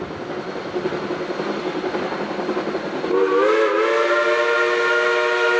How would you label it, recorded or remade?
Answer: recorded